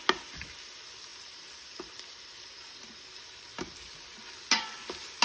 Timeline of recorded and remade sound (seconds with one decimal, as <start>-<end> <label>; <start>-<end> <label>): 0.0-1.1 recorded; 1.1-3.2 remade; 3.2-5.2 recorded

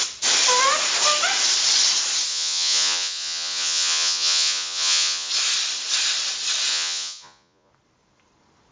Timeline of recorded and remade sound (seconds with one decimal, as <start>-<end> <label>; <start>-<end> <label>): 0.0-2.3 recorded; 2.3-5.3 remade; 5.3-6.7 recorded; 6.7-7.7 remade; 7.7-8.7 recorded